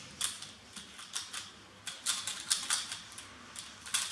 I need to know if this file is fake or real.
real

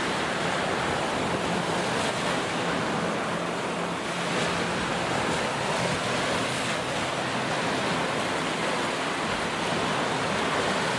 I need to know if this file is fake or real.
real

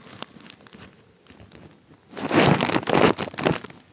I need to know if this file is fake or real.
real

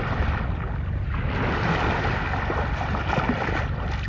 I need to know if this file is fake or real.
real